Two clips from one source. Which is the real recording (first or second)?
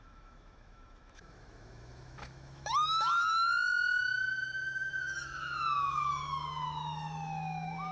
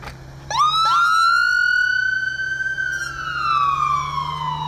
second